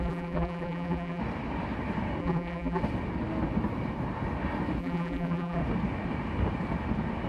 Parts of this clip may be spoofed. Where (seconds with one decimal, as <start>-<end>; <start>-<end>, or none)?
0.0-1.2; 2.2-2.8; 4.8-5.6